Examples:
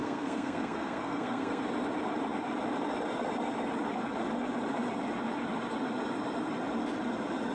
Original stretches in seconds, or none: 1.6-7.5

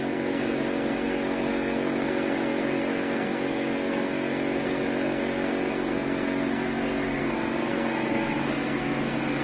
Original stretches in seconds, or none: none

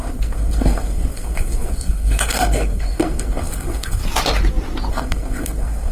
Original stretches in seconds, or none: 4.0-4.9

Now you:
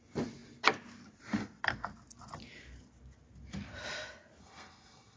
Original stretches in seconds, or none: 0.0-4.4

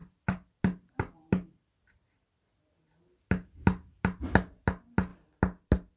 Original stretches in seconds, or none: 0.0-6.0

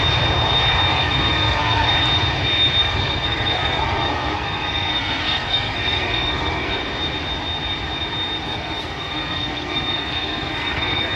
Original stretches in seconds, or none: 0.0-0.9; 1.9-2.8; 6.8-8.5

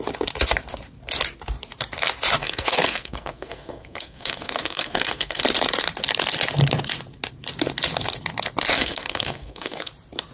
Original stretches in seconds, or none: 0.0-2.4; 5.4-8.7; 9.9-10.3